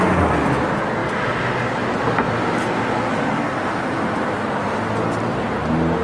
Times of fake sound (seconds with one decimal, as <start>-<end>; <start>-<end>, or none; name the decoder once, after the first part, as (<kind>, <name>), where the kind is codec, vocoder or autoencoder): none